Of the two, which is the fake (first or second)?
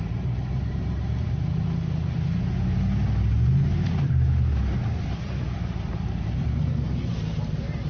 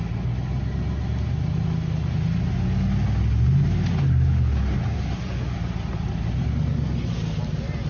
first